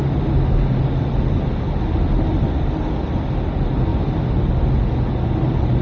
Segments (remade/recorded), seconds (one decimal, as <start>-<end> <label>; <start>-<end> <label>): 0.0-5.8 recorded